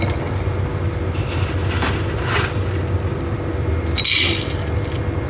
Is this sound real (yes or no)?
yes